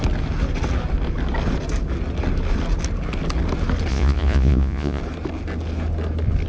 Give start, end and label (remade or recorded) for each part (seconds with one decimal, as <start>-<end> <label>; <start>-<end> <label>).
0.0-3.9 recorded; 3.9-5.0 remade; 5.0-6.5 recorded